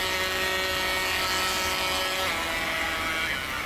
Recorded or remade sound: recorded